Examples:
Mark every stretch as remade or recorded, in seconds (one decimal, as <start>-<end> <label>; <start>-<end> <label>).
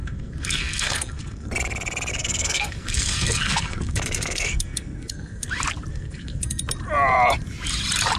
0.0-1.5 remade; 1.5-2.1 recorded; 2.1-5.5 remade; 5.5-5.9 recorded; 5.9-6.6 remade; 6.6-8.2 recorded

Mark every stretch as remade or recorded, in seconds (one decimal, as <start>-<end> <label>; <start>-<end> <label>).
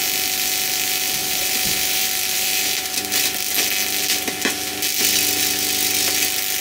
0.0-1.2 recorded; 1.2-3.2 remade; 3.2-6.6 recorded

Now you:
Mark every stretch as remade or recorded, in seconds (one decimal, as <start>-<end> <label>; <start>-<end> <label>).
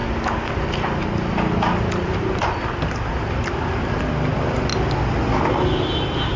0.0-6.4 recorded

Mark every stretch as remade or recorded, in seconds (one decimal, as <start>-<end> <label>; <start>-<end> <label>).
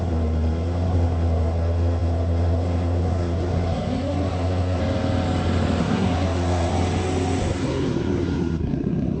0.0-4.8 remade; 4.8-5.8 recorded; 5.8-6.7 remade; 6.7-7.4 recorded; 7.4-9.2 remade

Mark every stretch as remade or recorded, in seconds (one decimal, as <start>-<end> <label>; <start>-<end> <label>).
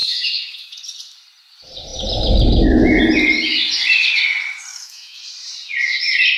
0.0-0.7 remade; 0.7-4.7 recorded; 4.7-5.2 remade; 5.2-6.4 recorded